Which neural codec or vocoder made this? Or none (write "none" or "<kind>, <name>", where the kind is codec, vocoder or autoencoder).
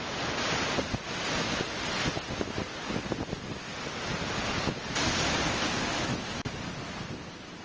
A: none